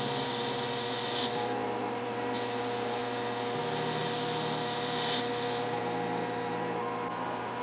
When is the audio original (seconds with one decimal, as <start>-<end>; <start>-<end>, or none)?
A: 0.0-7.6